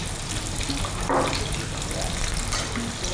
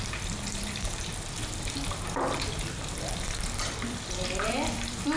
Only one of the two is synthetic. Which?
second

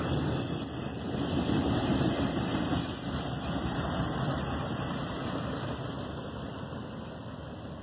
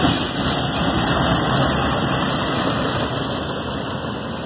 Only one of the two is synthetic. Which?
first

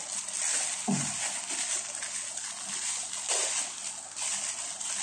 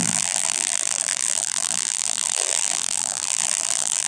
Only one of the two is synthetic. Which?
second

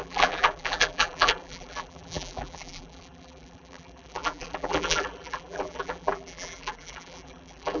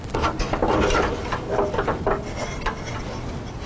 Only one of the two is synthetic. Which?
first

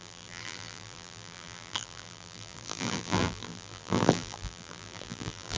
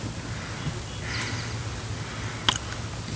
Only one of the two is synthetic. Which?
first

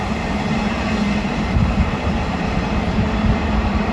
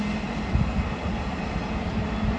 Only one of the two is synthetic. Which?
first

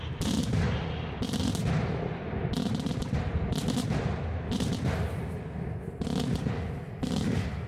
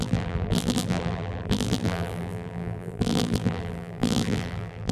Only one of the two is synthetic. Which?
second